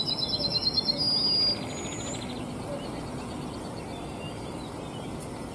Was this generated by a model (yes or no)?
no